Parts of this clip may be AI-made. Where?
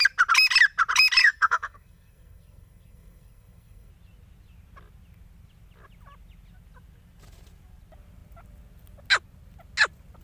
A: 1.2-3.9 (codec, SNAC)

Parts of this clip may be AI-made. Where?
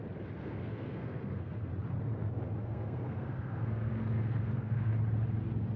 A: 0.4-1.7 (codec, SNAC); 2.6-4.9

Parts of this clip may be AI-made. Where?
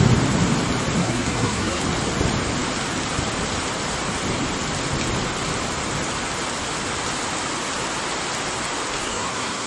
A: 1.0-1.8 (codec, SNAC); 9.0-9.7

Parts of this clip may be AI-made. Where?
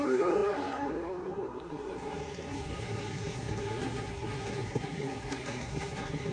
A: 0.0-6.3 (codec, SNAC)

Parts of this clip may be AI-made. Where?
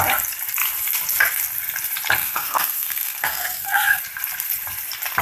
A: 2.2-4.0 (codec, SNAC)